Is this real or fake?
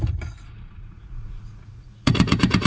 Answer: fake